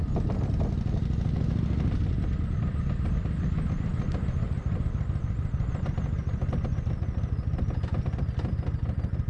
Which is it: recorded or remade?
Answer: recorded